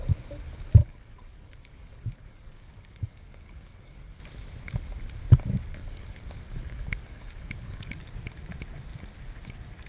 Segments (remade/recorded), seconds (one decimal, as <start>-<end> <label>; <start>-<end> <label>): 0.0-0.8 recorded; 0.8-4.2 remade; 4.2-5.8 recorded; 5.8-8.0 remade; 8.0-9.9 recorded